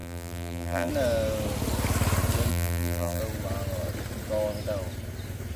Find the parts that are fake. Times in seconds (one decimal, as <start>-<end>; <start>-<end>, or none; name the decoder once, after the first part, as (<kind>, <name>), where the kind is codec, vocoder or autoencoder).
0.0-0.9 (vocoder, BigVGAN v2); 2.5-3.2